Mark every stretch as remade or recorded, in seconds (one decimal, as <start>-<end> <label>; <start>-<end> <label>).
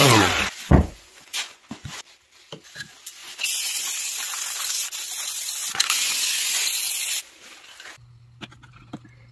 0.0-2.0 remade; 2.0-3.2 recorded; 3.2-3.8 remade; 3.8-5.6 recorded; 5.6-6.9 remade; 6.9-9.3 recorded